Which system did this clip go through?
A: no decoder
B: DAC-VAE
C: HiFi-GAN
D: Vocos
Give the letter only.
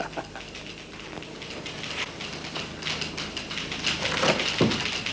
A